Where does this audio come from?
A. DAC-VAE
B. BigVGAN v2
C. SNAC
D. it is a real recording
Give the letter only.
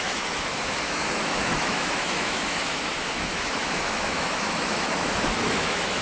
A